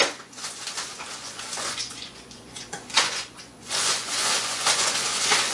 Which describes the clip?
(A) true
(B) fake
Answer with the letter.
B